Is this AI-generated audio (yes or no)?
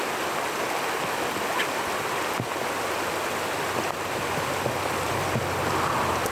no